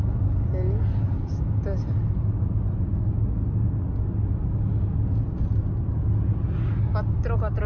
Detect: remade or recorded recorded